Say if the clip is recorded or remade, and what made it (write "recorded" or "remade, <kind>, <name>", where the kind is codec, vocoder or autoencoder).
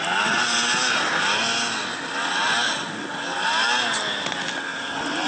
recorded